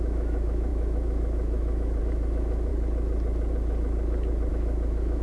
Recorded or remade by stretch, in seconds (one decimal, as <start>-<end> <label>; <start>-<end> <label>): 0.0-2.7 remade; 2.7-4.5 recorded; 4.5-5.2 remade